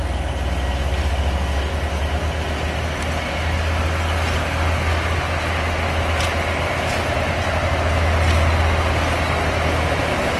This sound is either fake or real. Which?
real